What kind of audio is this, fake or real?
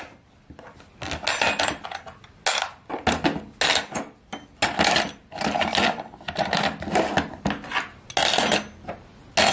real